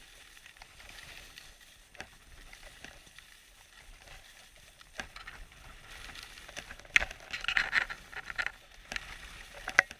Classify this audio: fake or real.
real